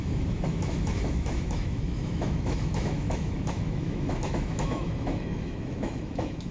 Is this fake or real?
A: fake